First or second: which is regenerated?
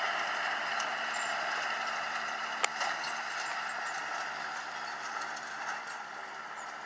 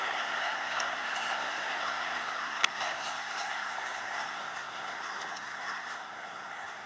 second